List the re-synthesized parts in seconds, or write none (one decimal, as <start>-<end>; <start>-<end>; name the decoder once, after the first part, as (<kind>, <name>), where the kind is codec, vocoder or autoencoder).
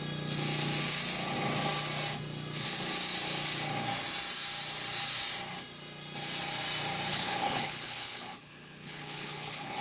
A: 7.1-9.8 (codec, HILCodec)